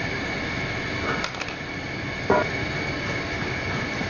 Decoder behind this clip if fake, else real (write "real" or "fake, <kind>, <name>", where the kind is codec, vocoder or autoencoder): real